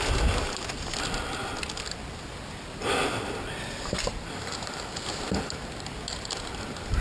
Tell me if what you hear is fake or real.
real